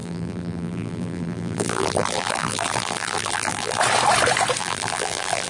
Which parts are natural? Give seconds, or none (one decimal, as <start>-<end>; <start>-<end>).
3.8-4.6